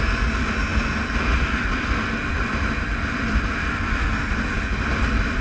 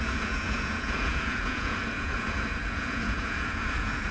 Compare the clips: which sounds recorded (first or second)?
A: first